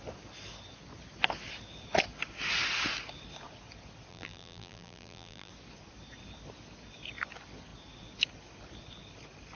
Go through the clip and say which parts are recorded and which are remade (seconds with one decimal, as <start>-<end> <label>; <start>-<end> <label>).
0.0-4.1 recorded; 4.1-5.5 remade; 5.5-9.5 recorded